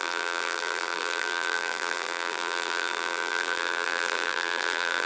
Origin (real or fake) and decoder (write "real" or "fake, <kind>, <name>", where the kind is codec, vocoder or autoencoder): fake, vocoder, BigVGAN v2